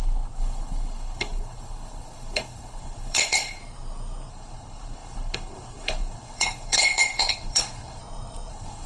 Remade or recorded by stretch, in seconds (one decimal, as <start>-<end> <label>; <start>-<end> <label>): 0.0-3.6 remade; 3.6-4.3 recorded; 4.3-8.0 remade; 8.0-8.5 recorded; 8.5-8.9 remade